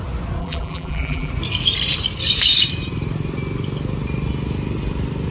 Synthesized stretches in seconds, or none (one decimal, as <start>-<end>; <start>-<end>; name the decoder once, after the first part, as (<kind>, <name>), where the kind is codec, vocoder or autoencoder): 0.4-1.3 (vocoder, BigVGAN v2)